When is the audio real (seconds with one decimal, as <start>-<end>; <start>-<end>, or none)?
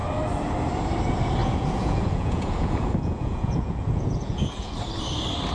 0.0-1.4; 4.7-5.5